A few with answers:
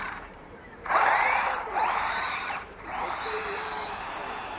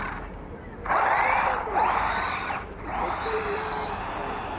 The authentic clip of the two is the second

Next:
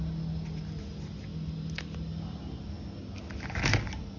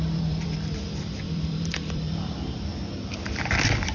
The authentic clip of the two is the first